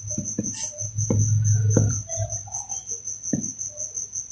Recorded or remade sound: recorded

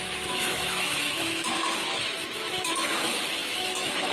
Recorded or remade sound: remade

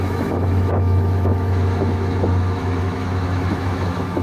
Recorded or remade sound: remade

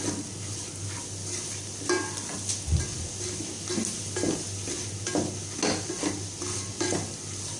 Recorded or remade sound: recorded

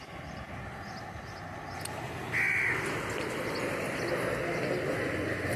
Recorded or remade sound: recorded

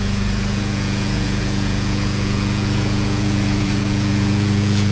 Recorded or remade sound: remade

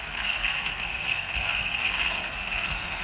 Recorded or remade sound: remade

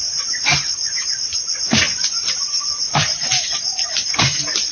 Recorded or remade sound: remade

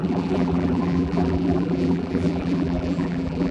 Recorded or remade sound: remade